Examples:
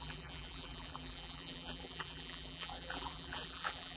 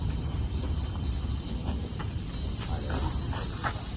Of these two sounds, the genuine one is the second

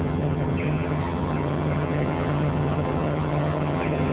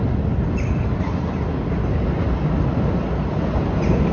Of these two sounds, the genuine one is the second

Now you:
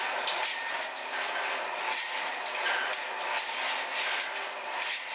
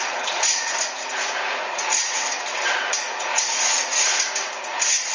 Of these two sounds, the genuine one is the first